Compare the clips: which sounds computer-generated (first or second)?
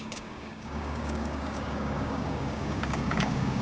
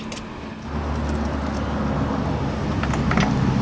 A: first